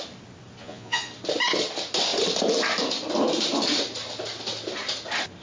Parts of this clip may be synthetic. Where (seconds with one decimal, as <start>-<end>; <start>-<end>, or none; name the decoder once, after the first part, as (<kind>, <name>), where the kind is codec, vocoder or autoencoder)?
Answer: 0.6-1.1 (vocoder, Vocos)